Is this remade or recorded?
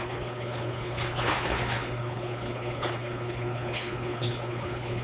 remade